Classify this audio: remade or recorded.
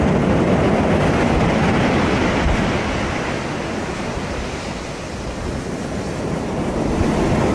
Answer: recorded